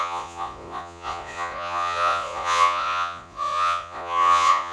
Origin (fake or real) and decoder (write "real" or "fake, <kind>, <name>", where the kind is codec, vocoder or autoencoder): fake, vocoder, Vocos